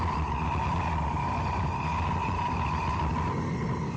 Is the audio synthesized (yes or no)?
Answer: no